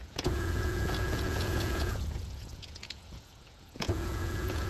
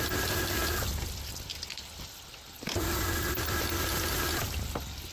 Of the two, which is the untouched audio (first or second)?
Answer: second